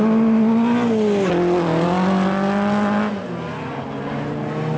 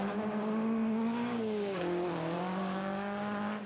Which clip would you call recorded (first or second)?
first